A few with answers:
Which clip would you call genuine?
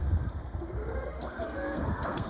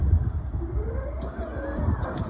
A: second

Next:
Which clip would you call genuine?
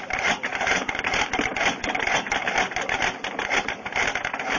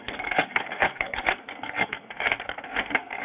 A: first